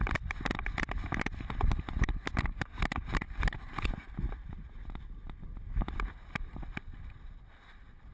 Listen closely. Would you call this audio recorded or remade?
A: recorded